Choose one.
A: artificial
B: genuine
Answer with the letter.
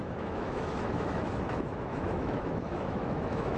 A